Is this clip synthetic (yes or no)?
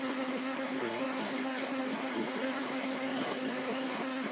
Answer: yes